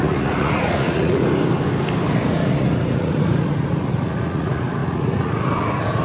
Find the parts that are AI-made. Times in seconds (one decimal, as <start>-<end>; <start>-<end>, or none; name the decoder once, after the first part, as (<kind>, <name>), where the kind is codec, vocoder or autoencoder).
0.0-1.2 (vocoder, Vocos); 2.1-6.0